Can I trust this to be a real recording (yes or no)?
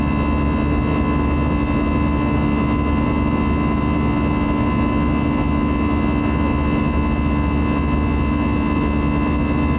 yes